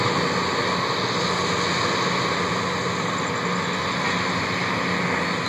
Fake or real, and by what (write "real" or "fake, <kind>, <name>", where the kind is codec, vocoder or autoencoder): real